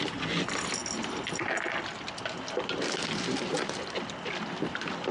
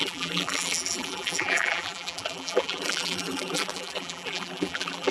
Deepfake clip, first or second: second